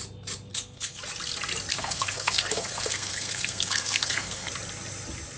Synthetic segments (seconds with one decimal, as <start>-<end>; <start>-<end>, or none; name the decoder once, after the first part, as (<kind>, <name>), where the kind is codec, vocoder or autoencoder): 0.5-1.0 (codec, SNAC); 1.7-4.5